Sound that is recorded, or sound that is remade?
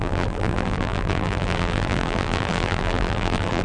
remade